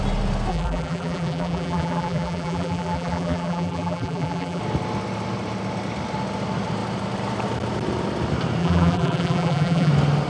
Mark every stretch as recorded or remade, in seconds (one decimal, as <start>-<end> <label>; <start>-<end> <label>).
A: 0.0-0.5 recorded; 0.5-4.6 remade; 4.6-8.6 recorded; 8.6-9.9 remade; 9.9-10.3 recorded